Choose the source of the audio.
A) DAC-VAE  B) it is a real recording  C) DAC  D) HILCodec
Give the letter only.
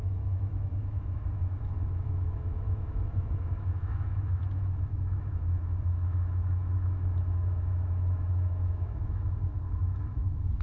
A